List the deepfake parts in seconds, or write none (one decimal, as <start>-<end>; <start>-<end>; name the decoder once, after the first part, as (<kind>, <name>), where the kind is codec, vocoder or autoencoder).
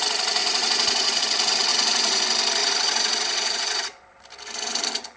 0.4-1.2 (vocoder, Vocos); 1.7-2.2; 2.6-4.2